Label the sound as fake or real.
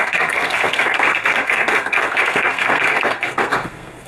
fake